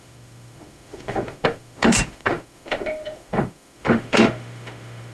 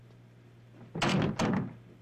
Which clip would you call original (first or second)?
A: second